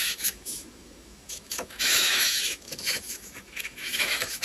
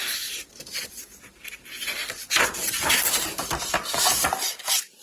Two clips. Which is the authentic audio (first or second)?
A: second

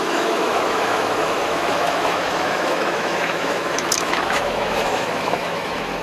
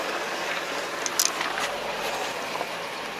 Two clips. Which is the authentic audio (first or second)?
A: second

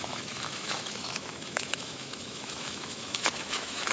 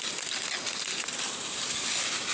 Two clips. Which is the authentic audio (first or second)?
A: second